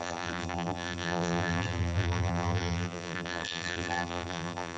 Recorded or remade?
remade